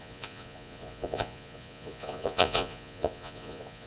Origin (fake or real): fake